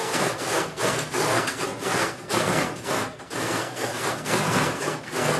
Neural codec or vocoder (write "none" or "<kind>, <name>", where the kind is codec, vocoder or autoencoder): codec, SNAC